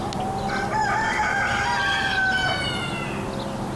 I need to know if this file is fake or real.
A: real